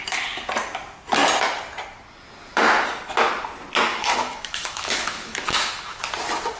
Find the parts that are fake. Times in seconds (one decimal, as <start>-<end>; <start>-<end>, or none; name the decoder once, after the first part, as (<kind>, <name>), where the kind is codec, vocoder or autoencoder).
3.9-6.0 (autoencoder, DAC-VAE)